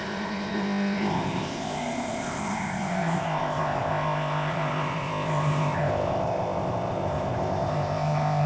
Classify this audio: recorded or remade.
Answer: remade